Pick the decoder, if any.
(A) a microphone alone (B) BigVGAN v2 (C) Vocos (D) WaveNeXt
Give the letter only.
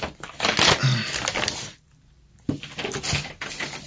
A